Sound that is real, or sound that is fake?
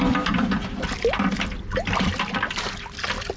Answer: real